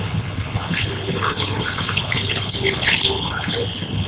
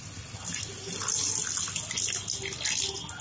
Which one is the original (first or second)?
second